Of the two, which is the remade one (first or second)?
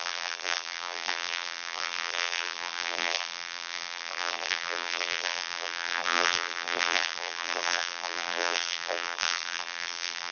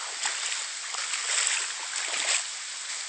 first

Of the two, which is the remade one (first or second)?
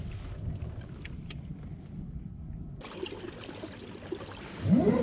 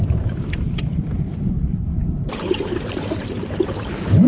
second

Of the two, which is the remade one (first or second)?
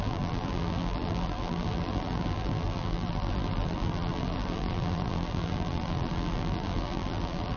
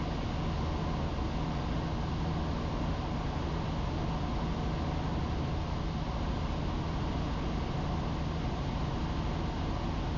first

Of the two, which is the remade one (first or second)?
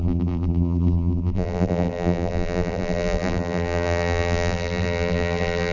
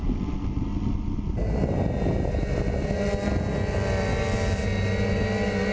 first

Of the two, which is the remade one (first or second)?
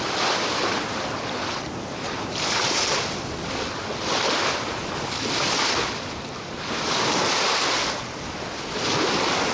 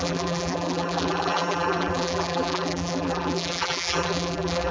second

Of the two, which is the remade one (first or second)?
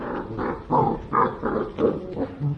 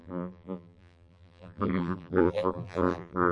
second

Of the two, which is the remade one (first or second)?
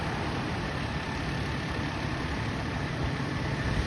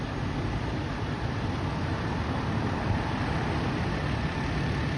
first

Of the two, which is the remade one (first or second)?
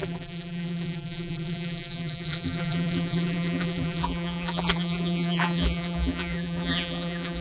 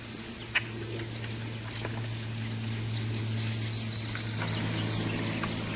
first